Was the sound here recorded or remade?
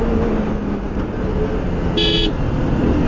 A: recorded